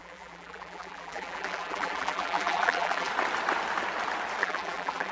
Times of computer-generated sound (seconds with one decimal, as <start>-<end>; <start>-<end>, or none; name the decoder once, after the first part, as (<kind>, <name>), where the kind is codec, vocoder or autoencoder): 0.0-3.1 (vocoder, BigVGAN v2); 4.4-5.1